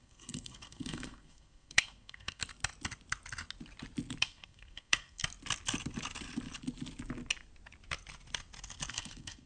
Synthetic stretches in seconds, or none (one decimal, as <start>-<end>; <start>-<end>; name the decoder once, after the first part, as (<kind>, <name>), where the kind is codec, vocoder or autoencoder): 0.0-2.4 (codec, SNAC); 4.2-5.2; 8.9-9.5